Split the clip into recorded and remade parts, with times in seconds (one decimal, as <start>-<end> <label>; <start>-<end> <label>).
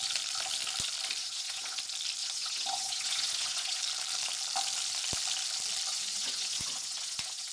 0.0-1.2 recorded; 1.2-1.8 remade; 1.8-2.2 recorded; 2.2-3.8 remade; 3.8-5.9 recorded; 5.9-7.5 remade